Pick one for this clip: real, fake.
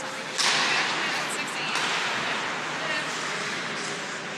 real